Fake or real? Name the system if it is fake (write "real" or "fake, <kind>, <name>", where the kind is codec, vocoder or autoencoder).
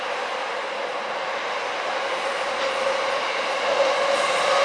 real